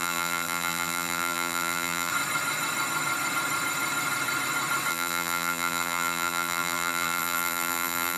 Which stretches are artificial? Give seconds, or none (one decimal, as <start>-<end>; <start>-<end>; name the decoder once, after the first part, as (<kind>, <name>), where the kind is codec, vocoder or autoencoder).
0.0-2.1 (vocoder, BigVGAN v2); 4.9-8.2